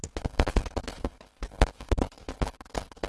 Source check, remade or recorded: recorded